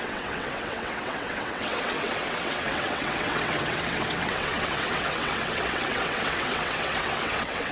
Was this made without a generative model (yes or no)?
no